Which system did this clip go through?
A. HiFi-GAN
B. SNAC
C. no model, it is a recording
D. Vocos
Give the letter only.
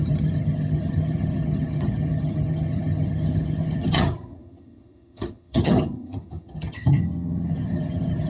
A